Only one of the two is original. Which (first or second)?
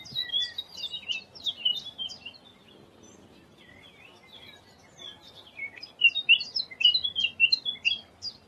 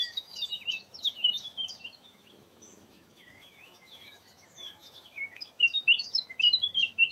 first